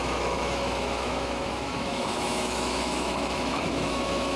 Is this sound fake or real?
fake